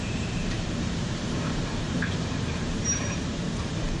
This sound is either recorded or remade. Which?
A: remade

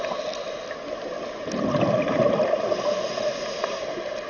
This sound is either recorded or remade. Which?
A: recorded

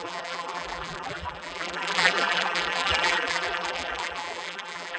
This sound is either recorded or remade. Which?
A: remade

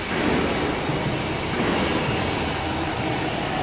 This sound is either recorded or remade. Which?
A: recorded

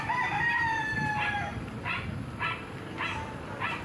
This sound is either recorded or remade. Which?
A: recorded